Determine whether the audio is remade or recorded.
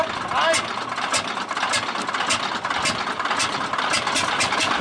recorded